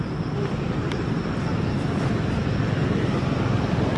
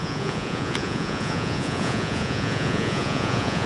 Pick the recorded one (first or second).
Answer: first